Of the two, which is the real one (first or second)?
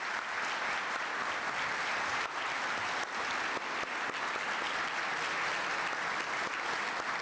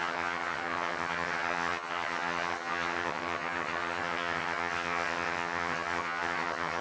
first